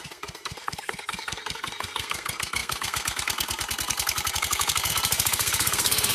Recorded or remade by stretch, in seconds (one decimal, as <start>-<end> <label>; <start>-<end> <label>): 0.0-6.1 remade